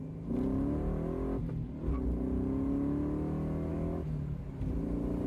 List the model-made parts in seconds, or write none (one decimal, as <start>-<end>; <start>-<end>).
3.7-4.4